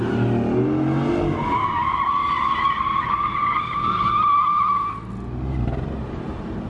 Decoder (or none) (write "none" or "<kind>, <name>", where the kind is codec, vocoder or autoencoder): none